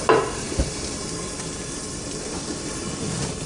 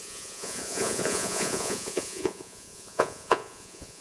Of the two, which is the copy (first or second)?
second